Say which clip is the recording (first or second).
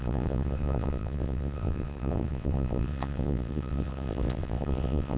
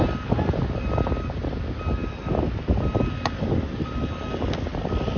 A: second